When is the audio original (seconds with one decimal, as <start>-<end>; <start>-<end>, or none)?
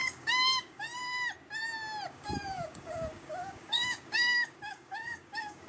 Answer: 1.0-2.1